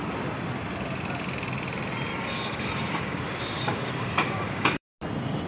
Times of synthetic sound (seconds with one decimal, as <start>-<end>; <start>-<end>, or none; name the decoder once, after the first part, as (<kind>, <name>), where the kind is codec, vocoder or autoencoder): 2.1-4.8 (codec, DAC)

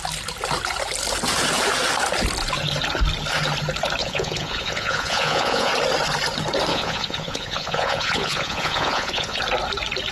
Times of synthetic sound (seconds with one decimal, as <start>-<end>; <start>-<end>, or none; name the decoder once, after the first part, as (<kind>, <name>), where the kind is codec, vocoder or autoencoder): 4.0-5.7 (vocoder, Vocos); 6.7-9.4

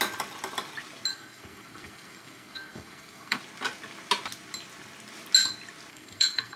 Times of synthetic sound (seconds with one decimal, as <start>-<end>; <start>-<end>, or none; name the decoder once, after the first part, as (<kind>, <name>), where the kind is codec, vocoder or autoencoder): 1.1-3.4 (codec, SNAC); 5.9-6.6

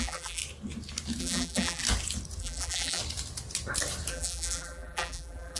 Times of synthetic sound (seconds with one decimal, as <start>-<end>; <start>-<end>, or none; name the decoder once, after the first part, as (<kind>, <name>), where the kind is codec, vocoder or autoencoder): 0.0-0.4 (vocoder, BigVGAN v2); 1.2-1.8; 2.4-3.0; 4.1-5.6